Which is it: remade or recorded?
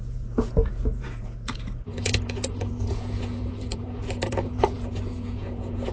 remade